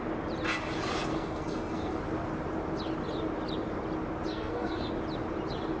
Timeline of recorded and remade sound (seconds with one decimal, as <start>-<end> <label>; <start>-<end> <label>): 0.0-1.1 recorded; 1.1-2.0 remade; 2.0-4.3 recorded; 4.3-4.9 remade; 4.9-5.8 recorded